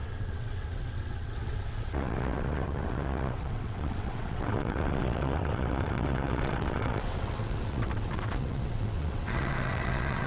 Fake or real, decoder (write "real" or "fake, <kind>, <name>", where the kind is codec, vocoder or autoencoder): fake, vocoder, WaveNeXt